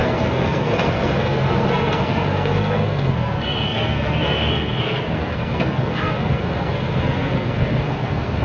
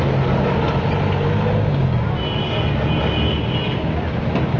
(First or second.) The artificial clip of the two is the first